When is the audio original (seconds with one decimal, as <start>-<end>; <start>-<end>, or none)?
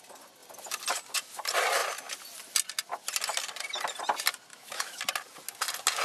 0.0-4.5; 5.0-6.0